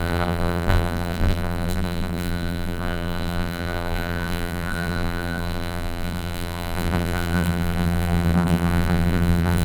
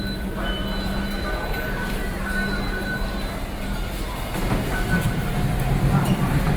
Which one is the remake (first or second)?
first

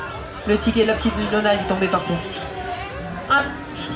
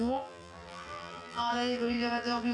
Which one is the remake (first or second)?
second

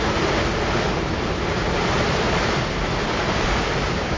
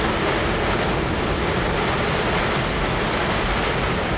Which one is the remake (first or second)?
first